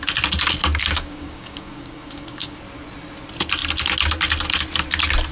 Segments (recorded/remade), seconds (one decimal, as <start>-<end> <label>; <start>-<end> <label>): 0.0-0.8 recorded; 0.8-2.6 remade; 2.6-5.3 recorded